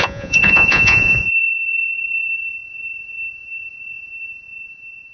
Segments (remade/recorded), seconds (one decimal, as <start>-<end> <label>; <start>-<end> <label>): 0.0-5.1 remade